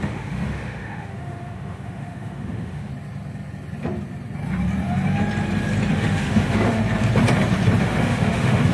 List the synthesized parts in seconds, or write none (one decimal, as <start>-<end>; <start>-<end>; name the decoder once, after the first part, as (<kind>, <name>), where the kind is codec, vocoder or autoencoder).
0.0-2.9 (autoencoder, DAC-VAE); 5.9-6.8; 7.8-8.7

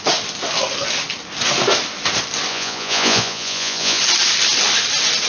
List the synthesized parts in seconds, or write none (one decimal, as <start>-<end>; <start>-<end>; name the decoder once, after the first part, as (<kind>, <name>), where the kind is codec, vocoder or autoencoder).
2.5-4.0 (vocoder, Vocos)

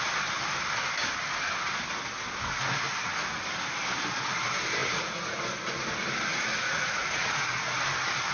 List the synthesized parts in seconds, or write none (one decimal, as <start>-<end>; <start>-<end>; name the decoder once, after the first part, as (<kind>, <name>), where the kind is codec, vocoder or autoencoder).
4.8-5.4 (vocoder, Vocos); 6.3-7.8